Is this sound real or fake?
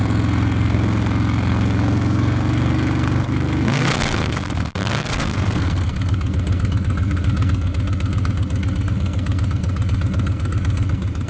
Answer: fake